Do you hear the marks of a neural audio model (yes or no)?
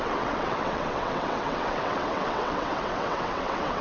yes